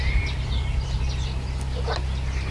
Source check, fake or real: real